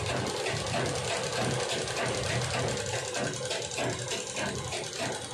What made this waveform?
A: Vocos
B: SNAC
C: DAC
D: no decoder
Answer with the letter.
D